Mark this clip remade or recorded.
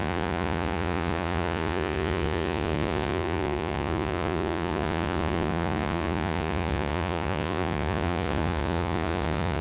remade